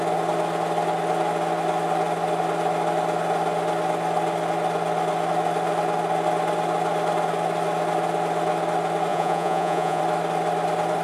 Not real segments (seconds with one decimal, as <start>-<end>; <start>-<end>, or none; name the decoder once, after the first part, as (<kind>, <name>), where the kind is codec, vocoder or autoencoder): 9.1-10.0 (vocoder, Vocos)